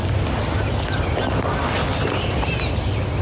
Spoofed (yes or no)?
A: no